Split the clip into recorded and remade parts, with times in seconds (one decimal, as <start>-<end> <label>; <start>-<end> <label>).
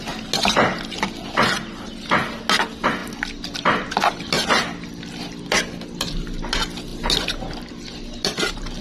0.0-8.8 recorded